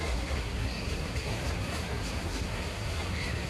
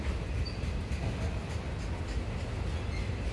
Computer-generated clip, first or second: first